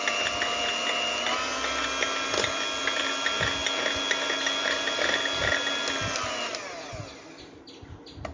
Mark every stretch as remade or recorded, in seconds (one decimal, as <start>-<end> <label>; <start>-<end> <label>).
0.0-8.3 recorded